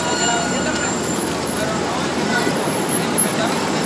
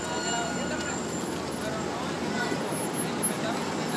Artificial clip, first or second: first